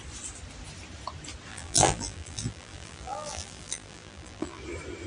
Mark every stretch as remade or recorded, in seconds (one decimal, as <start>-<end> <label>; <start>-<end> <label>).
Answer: 0.0-1.5 recorded; 1.5-4.6 remade; 4.6-5.1 recorded